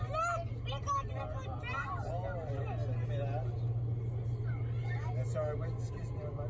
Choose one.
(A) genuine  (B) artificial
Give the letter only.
A